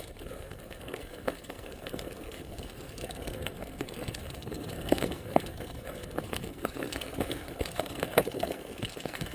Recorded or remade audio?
remade